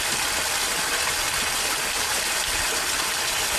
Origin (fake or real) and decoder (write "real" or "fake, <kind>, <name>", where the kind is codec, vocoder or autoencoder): real